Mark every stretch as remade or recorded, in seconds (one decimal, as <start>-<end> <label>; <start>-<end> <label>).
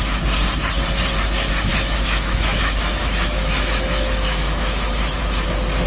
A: 0.0-1.7 recorded; 1.7-5.2 remade; 5.2-5.9 recorded